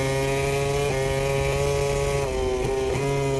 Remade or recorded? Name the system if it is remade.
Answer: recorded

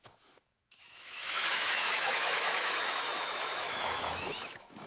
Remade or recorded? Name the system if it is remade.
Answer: remade, autoencoder, DAC-VAE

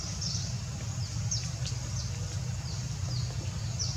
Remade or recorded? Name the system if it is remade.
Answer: remade, vocoder, BigVGAN v2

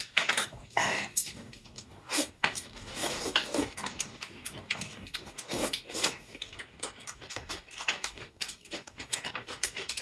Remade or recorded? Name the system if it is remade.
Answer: remade, codec, DAC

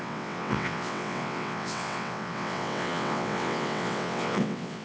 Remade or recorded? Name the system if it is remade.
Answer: remade, vocoder, WaveNeXt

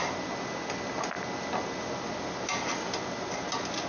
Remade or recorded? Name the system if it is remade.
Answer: recorded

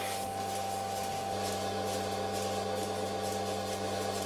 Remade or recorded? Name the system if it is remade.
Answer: recorded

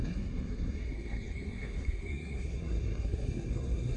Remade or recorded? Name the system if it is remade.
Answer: remade, codec, SNAC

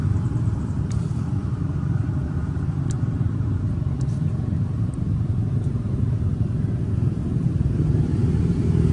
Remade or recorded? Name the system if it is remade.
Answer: remade, vocoder, BigVGAN v2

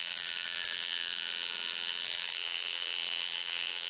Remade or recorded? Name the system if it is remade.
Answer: remade, vocoder, BigVGAN v2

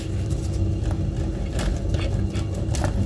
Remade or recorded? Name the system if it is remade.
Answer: recorded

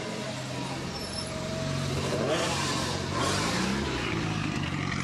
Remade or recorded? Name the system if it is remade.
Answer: remade, vocoder, BigVGAN v2